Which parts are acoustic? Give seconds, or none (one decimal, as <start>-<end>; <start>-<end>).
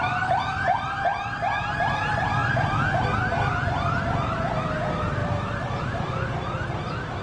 0.0-7.2